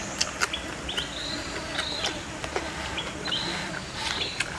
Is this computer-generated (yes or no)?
no